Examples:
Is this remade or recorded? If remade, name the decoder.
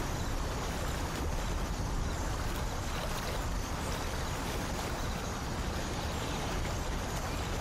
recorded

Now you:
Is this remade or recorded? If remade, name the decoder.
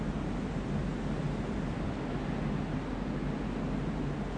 recorded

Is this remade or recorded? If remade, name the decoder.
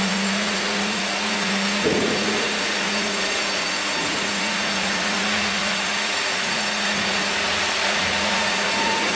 remade, vocoder, Vocos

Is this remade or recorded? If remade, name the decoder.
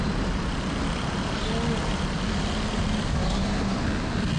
recorded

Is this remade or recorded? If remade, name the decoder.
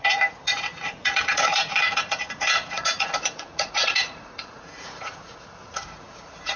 remade, vocoder, Vocos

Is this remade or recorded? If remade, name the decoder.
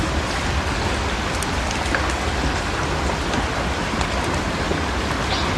recorded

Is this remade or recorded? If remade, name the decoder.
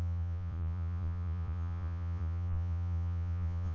remade, vocoder, Vocos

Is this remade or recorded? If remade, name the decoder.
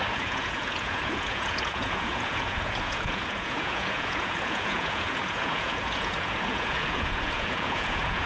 remade, vocoder, Vocos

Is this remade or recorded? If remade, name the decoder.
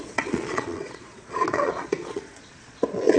remade, vocoder, Vocos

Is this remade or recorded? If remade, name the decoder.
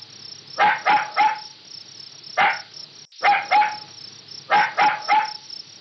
recorded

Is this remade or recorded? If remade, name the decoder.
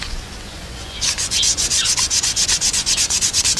remade, vocoder, Vocos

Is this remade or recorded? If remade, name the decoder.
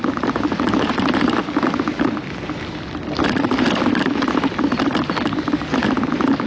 recorded